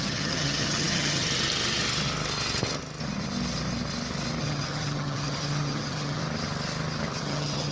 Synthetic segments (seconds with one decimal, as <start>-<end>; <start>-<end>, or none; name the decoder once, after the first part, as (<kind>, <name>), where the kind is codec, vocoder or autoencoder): 0.0-1.2 (vocoder, HiFi-GAN); 4.4-6.2; 7.2-7.7